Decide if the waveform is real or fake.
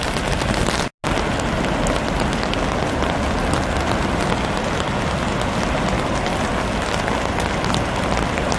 real